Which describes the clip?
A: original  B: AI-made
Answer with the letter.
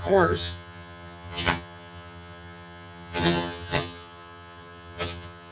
B